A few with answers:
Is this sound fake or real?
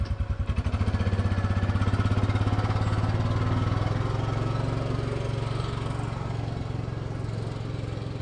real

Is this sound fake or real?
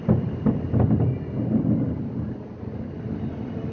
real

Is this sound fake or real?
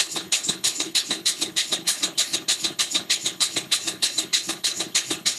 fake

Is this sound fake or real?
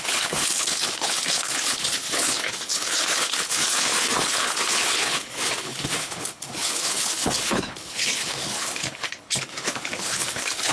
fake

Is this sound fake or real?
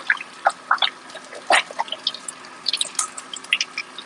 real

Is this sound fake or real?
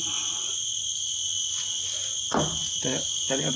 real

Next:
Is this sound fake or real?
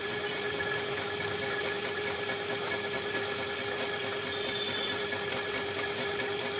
real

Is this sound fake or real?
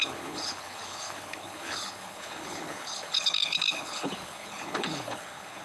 fake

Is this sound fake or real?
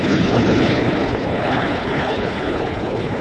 fake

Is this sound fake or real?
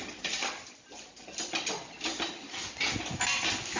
real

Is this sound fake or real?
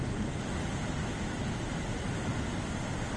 real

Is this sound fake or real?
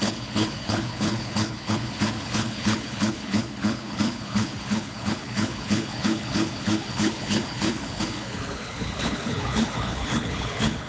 fake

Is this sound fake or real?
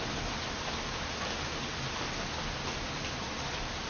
real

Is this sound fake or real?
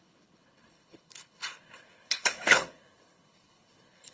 fake